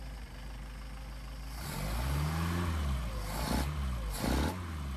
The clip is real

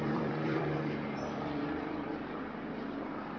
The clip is fake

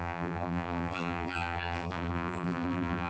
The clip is fake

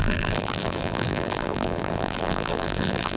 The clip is fake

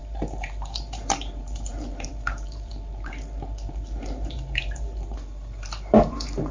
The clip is fake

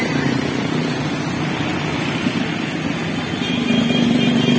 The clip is real